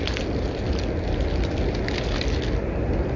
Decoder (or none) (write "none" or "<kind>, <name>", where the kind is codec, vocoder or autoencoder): none